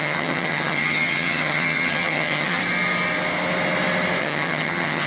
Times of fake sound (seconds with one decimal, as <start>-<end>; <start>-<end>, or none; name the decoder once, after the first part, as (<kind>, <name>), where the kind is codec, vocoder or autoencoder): 0.0-2.6 (vocoder, HiFi-GAN); 4.2-5.1